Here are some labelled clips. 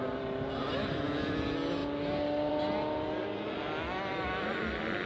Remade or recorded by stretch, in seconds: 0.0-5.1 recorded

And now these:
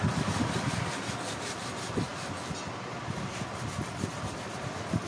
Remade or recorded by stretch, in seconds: 0.0-5.1 recorded

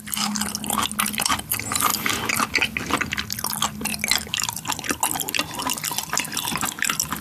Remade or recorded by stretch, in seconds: 0.0-7.2 recorded

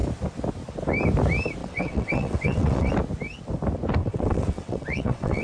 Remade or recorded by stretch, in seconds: 0.0-1.6 recorded; 1.6-2.9 remade; 2.9-4.0 recorded; 4.0-5.4 remade